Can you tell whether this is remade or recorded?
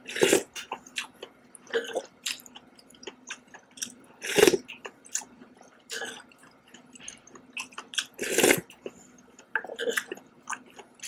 remade